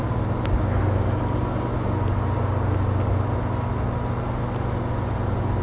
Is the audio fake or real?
real